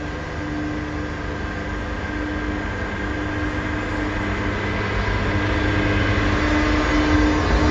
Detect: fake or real real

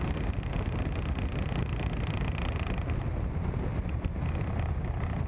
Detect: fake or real real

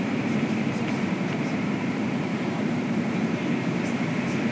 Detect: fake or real fake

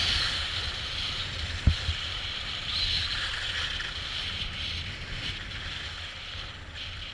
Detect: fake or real fake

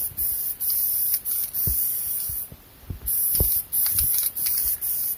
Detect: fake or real fake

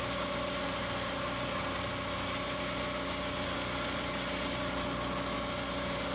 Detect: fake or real real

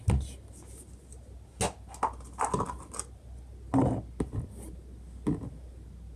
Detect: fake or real real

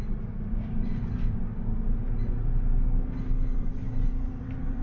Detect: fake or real real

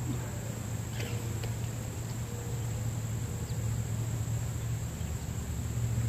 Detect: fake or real real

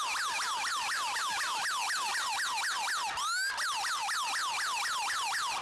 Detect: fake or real real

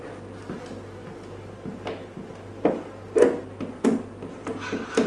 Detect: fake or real real